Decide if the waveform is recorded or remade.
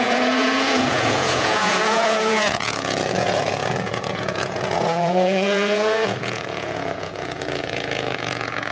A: remade